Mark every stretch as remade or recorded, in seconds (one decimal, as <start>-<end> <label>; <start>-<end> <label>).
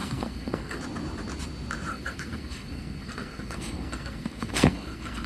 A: 0.0-0.8 remade; 0.8-1.9 recorded; 1.9-5.3 remade